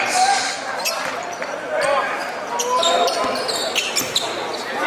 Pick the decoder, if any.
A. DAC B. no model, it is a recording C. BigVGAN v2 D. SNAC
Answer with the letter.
B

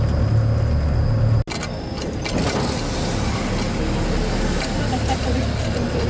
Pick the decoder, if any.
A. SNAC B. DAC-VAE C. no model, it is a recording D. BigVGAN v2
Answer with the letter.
C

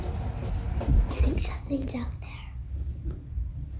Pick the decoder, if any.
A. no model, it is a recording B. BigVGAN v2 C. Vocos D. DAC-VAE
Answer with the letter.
A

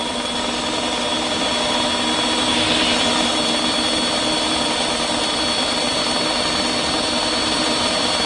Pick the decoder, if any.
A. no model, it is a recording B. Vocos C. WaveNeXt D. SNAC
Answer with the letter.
A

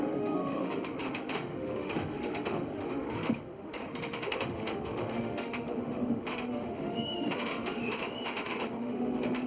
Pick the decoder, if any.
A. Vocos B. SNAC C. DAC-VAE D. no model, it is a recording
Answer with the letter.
C